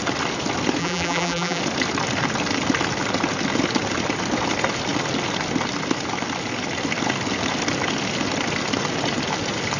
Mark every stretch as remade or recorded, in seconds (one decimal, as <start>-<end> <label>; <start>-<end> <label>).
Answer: 0.0-0.8 recorded; 0.8-1.6 remade; 1.6-9.8 recorded